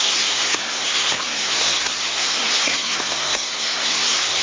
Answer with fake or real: fake